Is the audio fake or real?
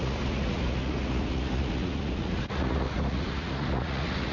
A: fake